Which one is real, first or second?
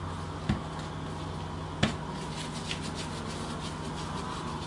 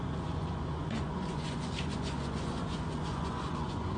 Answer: first